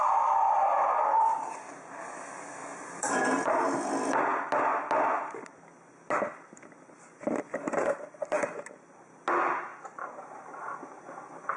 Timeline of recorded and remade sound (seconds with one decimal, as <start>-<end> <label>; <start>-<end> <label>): 0.0-2.6 recorded; 2.6-3.9 remade; 3.9-9.7 recorded; 9.7-10.8 remade; 10.8-11.6 recorded